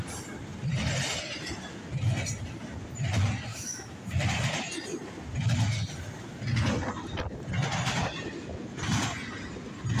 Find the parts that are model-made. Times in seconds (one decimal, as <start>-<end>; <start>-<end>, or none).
3.5-4.1